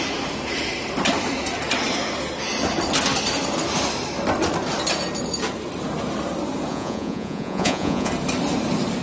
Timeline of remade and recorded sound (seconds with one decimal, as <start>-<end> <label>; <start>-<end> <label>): 0.0-6.7 recorded; 6.7-8.1 remade; 8.1-9.0 recorded